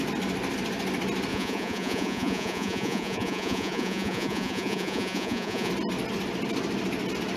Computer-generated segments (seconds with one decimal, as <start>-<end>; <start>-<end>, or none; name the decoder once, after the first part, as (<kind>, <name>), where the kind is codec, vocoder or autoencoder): 1.3-5.7 (vocoder, Vocos)